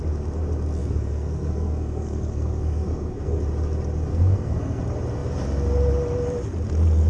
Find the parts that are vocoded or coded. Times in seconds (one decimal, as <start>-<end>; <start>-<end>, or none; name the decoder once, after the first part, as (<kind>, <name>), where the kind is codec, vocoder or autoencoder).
0.8-3.4 (codec, SNAC); 4.1-4.8